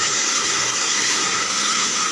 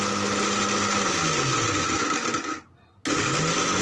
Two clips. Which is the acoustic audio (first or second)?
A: second